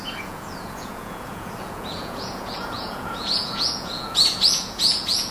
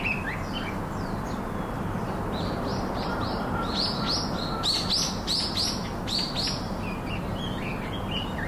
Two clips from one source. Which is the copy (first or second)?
first